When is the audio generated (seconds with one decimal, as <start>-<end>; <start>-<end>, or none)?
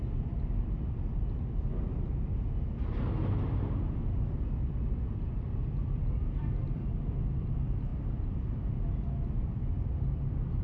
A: 0.0-1.7; 4.1-10.6